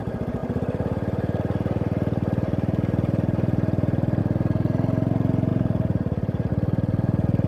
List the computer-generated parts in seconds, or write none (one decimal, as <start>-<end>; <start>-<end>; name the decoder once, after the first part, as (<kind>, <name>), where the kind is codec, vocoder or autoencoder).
0.4-4.2 (vocoder, BigVGAN v2); 5.5-6.5

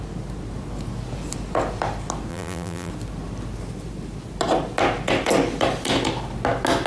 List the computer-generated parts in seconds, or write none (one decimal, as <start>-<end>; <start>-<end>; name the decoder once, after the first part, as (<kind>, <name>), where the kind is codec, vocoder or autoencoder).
2.3-2.9 (vocoder, BigVGAN v2)

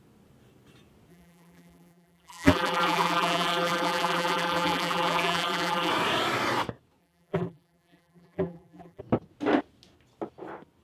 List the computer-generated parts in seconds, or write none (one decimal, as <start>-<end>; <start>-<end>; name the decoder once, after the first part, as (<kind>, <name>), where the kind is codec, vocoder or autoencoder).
1.1-5.9 (vocoder, BigVGAN v2); 7.0-9.0

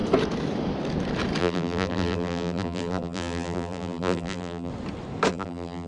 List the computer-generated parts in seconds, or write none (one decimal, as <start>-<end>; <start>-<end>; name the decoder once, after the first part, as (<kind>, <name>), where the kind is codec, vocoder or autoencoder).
1.4-4.7 (vocoder, BigVGAN v2); 5.3-5.9

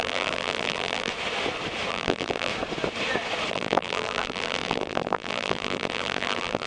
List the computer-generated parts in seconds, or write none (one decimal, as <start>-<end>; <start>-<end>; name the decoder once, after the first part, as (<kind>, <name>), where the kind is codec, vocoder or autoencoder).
0.0-1.1 (vocoder, BigVGAN v2); 1.9-2.5; 3.5-6.7

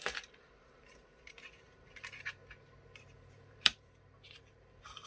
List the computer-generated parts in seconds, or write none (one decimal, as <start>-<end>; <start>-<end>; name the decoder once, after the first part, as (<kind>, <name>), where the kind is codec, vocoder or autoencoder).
0.0-2.4 (vocoder, BigVGAN v2); 3.0-5.1

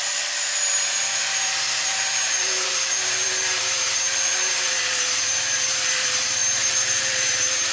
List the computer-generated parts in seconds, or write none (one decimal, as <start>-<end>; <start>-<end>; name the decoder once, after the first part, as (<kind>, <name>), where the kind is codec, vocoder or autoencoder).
0.0-7.7 (vocoder, BigVGAN v2)

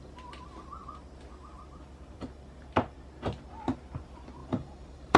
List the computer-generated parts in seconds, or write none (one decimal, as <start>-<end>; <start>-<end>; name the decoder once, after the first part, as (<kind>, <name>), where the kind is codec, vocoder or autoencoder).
4.4-5.2 (vocoder, BigVGAN v2)